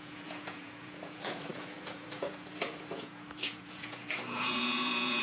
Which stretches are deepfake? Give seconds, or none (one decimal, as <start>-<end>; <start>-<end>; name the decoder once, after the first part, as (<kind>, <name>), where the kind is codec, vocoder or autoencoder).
0.0-5.2 (vocoder, Vocos)